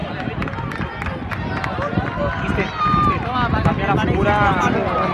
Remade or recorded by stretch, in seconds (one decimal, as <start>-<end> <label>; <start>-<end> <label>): 0.0-5.1 recorded